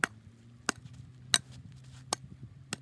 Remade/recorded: recorded